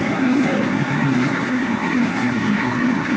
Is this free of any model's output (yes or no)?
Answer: no